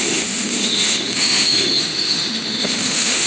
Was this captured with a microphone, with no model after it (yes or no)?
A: no